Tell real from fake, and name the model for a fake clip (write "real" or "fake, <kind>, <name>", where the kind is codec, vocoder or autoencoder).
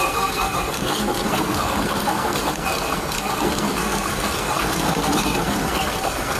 fake, codec, SNAC